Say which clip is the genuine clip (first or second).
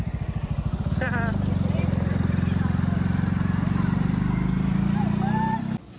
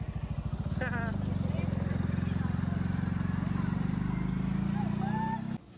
second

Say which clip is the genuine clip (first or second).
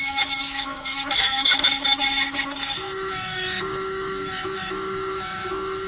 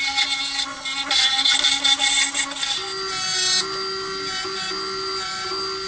second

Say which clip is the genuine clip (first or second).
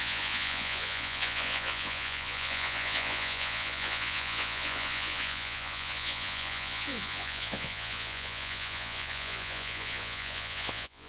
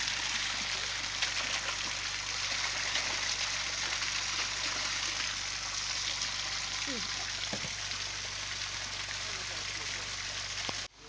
second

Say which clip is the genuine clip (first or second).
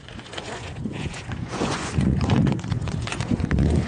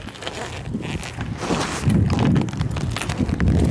second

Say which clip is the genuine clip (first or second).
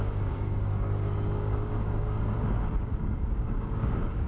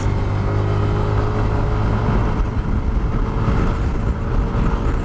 second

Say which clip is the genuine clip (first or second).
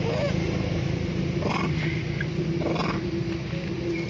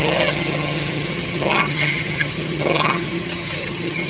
first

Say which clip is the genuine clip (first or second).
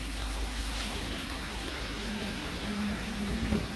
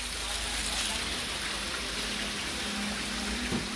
second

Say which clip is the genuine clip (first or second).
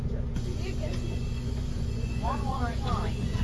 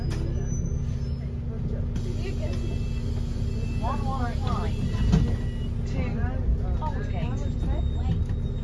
second